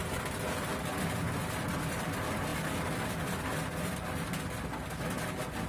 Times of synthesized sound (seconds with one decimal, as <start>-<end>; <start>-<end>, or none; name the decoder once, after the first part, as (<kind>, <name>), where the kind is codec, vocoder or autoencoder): none